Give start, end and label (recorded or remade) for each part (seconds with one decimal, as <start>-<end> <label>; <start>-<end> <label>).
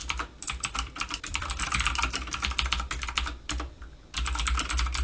0.0-1.6 remade; 1.6-5.0 recorded